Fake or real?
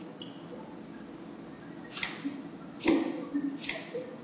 real